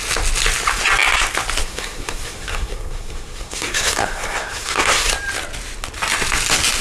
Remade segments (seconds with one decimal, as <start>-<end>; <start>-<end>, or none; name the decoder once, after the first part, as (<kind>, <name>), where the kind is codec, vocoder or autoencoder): 1.6-5.1 (codec, SNAC)